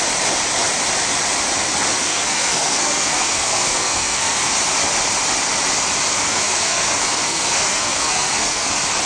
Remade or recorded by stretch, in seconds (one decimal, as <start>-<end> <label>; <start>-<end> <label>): 0.0-1.9 recorded; 1.9-4.5 remade; 4.5-6.1 recorded; 6.1-8.7 remade; 8.7-9.1 recorded